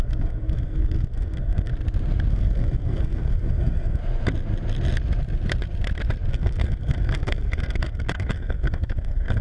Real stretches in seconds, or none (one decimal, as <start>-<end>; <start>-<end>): 1.7-2.3; 4.0-6.3